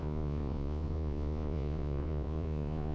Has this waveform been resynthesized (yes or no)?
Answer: yes